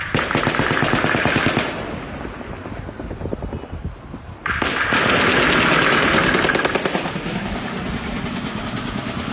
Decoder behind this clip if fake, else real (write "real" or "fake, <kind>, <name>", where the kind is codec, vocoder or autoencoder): real